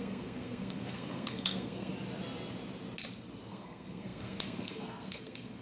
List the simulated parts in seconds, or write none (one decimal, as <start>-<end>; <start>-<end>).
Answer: 0.0-1.9; 3.5-5.6